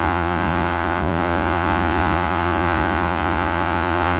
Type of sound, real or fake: fake